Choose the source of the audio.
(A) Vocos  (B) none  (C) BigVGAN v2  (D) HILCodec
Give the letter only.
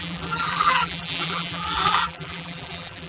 C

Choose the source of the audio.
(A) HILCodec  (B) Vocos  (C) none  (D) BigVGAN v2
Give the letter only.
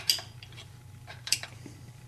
D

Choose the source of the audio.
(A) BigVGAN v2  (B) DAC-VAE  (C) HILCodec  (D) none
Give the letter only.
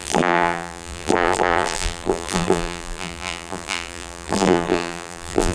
A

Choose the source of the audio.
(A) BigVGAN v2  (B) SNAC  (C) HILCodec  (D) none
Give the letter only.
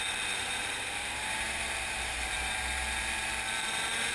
A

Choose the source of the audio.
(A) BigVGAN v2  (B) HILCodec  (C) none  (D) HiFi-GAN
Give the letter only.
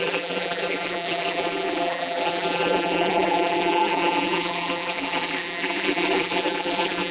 A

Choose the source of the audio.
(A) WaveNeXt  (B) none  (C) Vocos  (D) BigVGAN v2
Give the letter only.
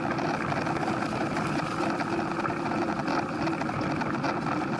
B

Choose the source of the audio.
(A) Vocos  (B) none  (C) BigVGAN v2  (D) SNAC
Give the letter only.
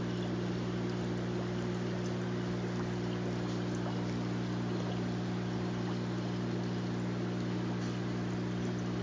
B